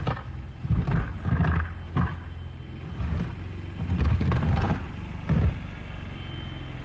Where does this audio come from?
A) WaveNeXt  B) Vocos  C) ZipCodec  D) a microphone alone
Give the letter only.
D